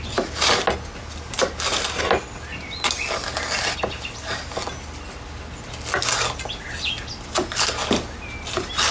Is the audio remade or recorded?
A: recorded